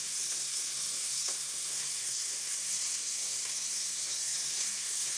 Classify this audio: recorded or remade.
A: remade